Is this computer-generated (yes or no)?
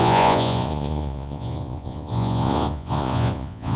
yes